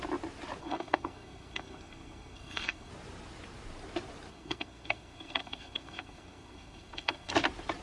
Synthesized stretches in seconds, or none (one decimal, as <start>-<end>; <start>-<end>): 0.6-2.9; 4.3-7.3

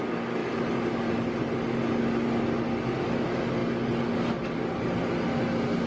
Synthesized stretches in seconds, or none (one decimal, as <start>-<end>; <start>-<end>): none

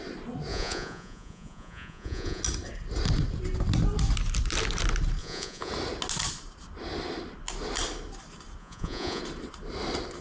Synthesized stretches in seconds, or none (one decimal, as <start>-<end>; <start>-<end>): 0.5-2.4; 5.2-5.7; 8.6-9.2

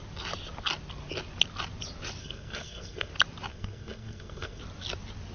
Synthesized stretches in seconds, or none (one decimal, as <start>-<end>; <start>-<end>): 2.2-3.1; 3.5-4.6

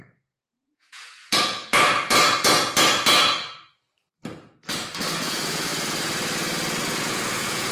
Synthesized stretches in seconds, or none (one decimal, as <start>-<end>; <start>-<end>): 0.0-1.7; 5.2-5.7; 7.0-7.7

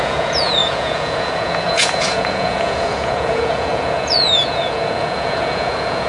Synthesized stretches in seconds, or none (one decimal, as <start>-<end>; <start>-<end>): 0.0-6.1

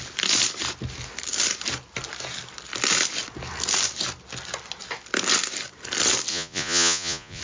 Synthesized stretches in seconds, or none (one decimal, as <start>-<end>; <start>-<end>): 6.3-7.4